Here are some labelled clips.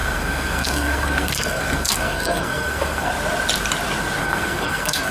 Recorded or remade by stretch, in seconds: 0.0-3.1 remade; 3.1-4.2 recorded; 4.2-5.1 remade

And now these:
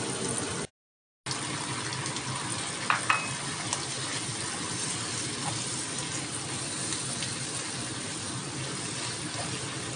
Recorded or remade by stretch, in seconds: 0.0-10.0 recorded

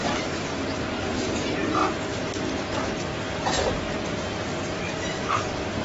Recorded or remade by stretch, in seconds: 0.0-1.8 remade; 1.8-5.3 recorded; 5.3-5.8 remade

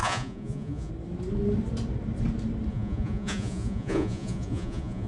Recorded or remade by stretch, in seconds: 0.0-0.9 remade; 0.9-2.7 recorded; 2.7-5.1 remade

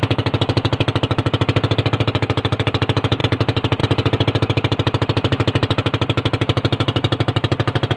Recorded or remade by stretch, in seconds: 0.0-8.0 recorded

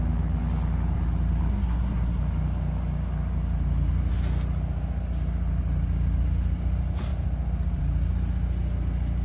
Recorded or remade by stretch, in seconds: 0.0-1.5 recorded; 1.5-2.2 remade; 2.2-9.2 recorded

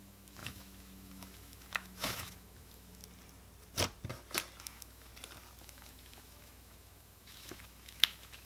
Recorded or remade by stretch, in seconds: 0.0-3.0 remade; 3.0-4.6 recorded; 4.6-5.1 remade; 5.1-5.6 recorded; 5.6-8.5 remade